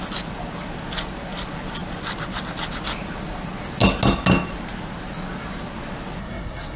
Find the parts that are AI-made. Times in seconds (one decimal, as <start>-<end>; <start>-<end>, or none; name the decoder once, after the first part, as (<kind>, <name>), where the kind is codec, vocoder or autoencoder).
6.2-6.8 (codec, SNAC)